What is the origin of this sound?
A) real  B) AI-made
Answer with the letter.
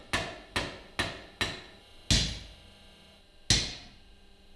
A